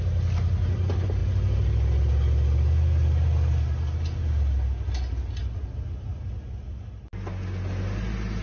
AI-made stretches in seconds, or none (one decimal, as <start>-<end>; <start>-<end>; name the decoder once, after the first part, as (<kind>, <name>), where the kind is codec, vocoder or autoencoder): none